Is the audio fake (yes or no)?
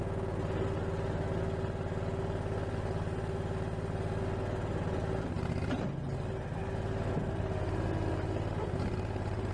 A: no